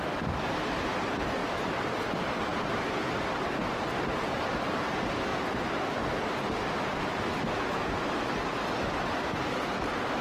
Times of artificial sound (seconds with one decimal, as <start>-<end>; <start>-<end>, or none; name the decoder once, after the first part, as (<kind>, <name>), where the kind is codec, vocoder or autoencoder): 2.5-3.3 (vocoder, BigVGAN v2)